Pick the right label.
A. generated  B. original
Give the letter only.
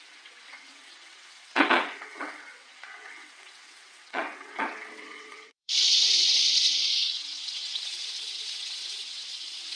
A